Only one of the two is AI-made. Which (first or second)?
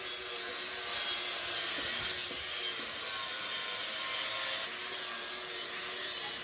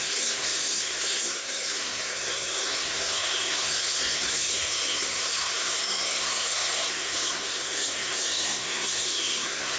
second